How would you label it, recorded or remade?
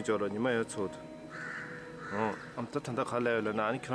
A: recorded